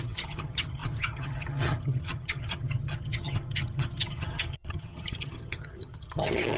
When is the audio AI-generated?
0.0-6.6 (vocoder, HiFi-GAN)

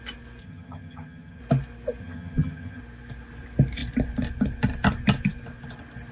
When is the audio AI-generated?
0.4-1.4 (vocoder, HiFi-GAN); 2.0-2.8